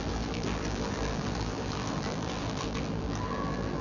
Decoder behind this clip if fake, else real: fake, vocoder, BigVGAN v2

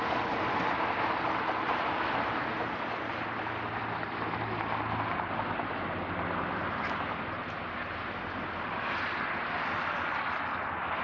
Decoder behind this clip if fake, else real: real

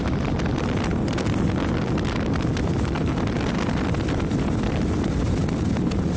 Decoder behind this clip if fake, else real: fake, vocoder, BigVGAN v2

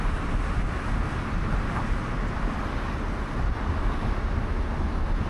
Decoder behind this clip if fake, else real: real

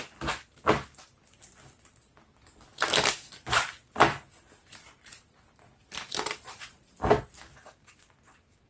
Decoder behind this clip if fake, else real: real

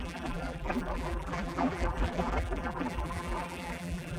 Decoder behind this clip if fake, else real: fake, vocoder, BigVGAN v2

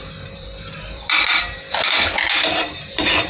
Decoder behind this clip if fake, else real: fake, vocoder, BigVGAN v2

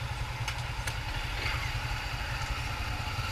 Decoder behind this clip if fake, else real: real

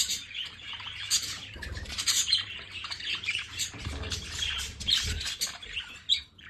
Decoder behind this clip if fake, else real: fake, vocoder, BigVGAN v2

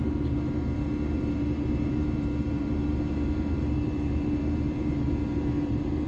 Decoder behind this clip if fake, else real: fake, vocoder, BigVGAN v2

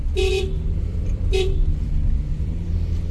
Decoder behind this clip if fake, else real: fake, vocoder, BigVGAN v2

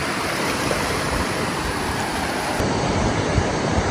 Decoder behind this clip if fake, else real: fake, vocoder, BigVGAN v2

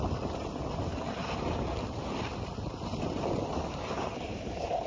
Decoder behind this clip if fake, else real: real